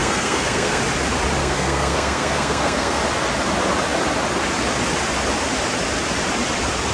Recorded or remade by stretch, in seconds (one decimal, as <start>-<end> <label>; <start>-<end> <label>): 0.0-0.8 remade; 0.8-1.4 recorded; 1.4-3.0 remade; 3.0-6.9 recorded